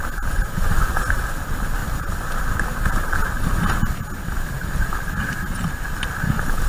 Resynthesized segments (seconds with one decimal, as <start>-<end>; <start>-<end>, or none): none